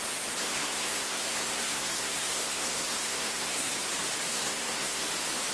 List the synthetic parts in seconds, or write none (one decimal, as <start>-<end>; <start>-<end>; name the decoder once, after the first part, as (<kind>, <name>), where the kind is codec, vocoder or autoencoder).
0.4-3.7 (codec, SNAC); 4.3-5.1